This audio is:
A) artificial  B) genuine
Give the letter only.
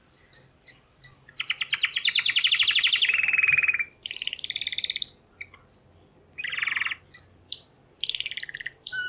A